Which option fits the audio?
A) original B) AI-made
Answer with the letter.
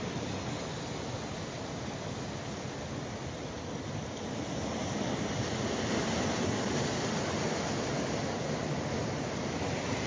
A